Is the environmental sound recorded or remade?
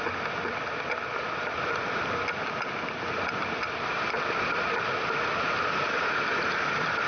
recorded